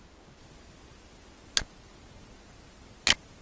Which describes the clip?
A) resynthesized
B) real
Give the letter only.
B